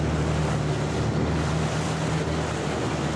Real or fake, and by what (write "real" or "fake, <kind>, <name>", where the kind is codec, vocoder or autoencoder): real